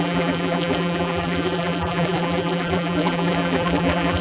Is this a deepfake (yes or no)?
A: yes